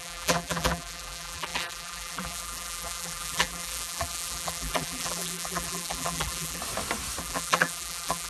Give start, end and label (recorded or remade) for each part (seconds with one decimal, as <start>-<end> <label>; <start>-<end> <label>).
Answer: 0.0-6.6 remade; 6.6-7.2 recorded; 7.2-8.3 remade